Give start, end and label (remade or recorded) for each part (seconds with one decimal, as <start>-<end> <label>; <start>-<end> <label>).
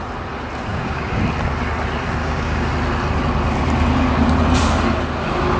0.0-0.7 recorded; 0.7-1.2 remade; 1.2-2.2 recorded; 2.2-2.7 remade; 2.7-5.6 recorded